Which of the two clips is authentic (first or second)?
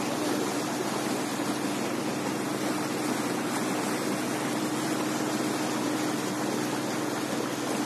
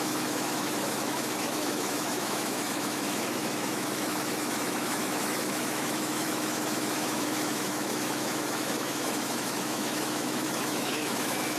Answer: first